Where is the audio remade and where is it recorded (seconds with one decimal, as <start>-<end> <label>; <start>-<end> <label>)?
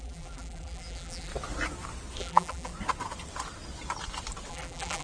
0.0-1.3 remade; 1.3-2.2 recorded; 2.2-2.7 remade; 2.7-4.5 recorded; 4.5-5.0 remade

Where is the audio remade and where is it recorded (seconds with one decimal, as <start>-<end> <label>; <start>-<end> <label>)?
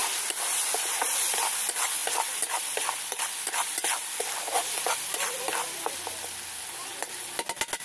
0.0-2.0 recorded; 2.0-5.4 remade; 5.4-7.8 recorded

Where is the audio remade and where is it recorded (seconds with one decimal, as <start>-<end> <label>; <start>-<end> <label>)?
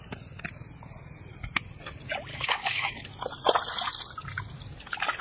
0.0-2.3 recorded; 2.3-3.1 remade; 3.1-5.2 recorded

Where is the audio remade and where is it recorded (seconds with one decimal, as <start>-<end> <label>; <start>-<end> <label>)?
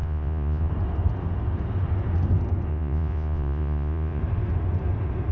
0.0-0.7 remade; 0.7-2.7 recorded; 2.7-4.2 remade; 4.2-5.3 recorded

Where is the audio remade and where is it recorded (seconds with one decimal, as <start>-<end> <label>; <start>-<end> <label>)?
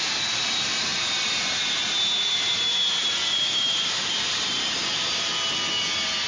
0.0-5.3 remade; 5.3-6.3 recorded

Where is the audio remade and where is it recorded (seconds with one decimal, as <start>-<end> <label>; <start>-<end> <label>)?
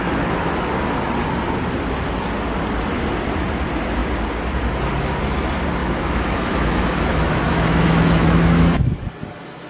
0.0-0.7 remade; 0.7-5.8 recorded; 5.8-9.1 remade; 9.1-9.7 recorded